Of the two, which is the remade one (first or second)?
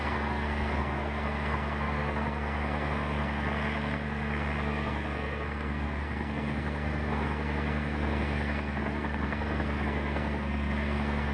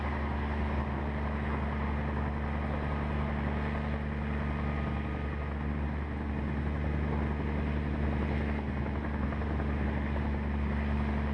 first